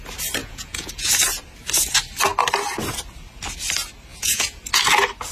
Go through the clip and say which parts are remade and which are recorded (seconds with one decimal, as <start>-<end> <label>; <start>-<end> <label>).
0.0-0.4 recorded; 0.4-1.1 remade; 1.1-4.1 recorded; 4.1-4.6 remade; 4.6-5.3 recorded